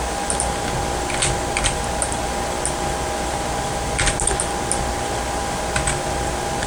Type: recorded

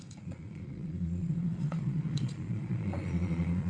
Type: remade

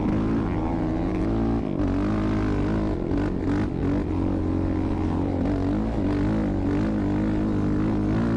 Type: recorded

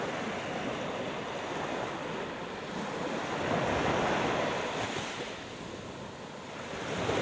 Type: recorded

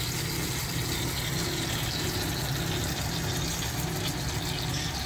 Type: recorded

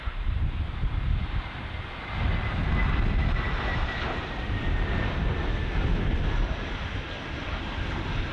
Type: recorded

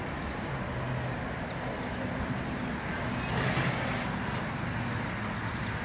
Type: recorded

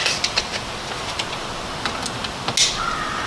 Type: recorded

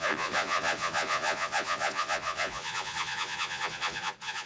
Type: remade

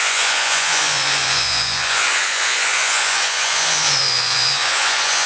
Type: remade